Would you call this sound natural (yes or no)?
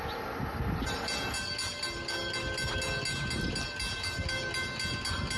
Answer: yes